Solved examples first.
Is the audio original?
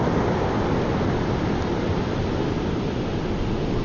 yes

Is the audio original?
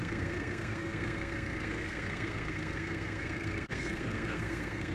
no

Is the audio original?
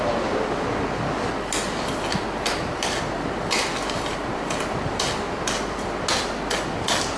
yes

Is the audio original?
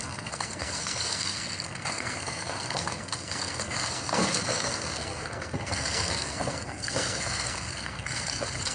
no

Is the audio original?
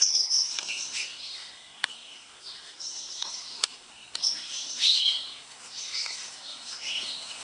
no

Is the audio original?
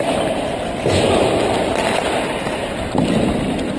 yes